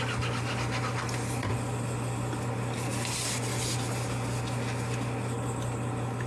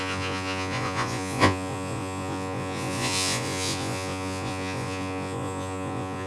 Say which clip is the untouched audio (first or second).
first